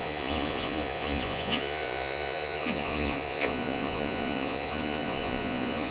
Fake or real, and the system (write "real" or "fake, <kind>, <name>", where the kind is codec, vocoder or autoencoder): fake, vocoder, Vocos